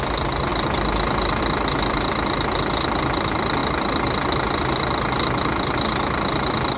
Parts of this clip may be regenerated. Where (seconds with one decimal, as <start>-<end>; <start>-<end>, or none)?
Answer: none